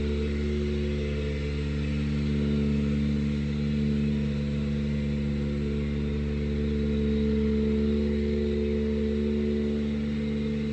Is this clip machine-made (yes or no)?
no